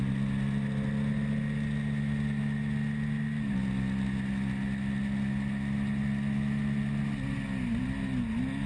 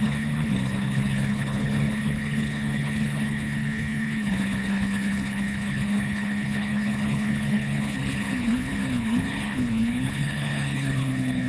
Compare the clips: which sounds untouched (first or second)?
first